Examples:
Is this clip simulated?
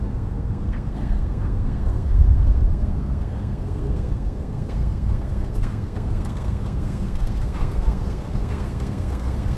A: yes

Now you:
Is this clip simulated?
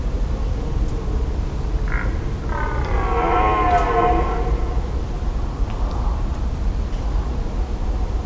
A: no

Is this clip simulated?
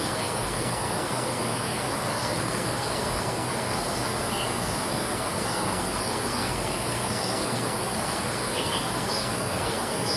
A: yes